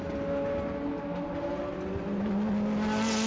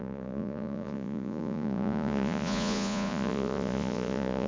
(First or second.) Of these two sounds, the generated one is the second